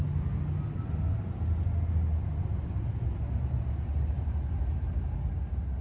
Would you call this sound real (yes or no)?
yes